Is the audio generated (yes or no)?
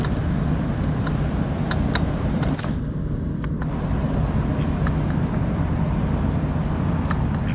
no